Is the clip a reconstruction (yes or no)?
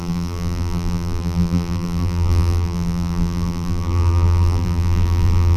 yes